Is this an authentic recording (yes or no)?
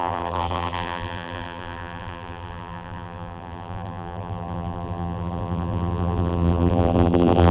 no